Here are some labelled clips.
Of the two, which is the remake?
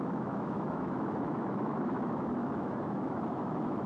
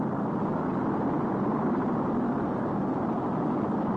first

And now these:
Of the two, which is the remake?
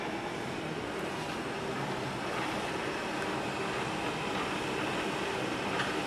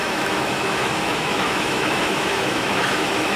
second